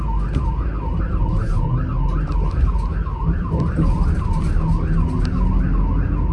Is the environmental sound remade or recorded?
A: recorded